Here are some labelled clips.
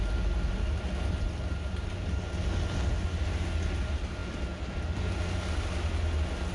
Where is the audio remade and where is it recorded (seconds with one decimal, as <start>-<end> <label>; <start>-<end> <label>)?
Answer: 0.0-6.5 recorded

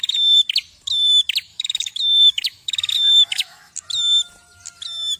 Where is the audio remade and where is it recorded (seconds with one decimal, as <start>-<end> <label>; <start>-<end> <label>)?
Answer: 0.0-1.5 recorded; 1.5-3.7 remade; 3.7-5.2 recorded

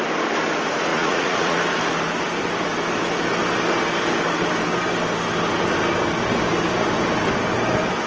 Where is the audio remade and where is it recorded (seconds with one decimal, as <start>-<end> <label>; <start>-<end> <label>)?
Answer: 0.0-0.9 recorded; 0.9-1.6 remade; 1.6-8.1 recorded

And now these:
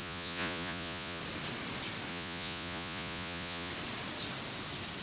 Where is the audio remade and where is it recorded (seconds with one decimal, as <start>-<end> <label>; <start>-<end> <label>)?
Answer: 0.0-1.2 remade; 1.2-2.1 recorded; 2.1-3.7 remade; 3.7-5.0 recorded

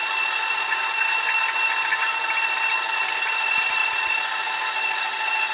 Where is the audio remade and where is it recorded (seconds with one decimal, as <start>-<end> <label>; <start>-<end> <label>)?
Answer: 0.0-5.5 recorded

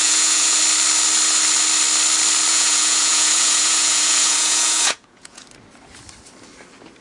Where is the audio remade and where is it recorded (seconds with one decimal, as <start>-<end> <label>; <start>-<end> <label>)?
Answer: 0.0-0.6 remade; 0.6-2.5 recorded; 2.5-5.4 remade; 5.4-7.0 recorded

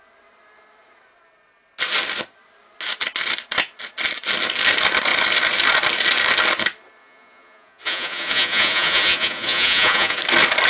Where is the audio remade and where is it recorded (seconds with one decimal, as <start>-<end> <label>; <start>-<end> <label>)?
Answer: 0.0-7.0 recorded; 7.0-10.2 remade; 10.2-10.7 recorded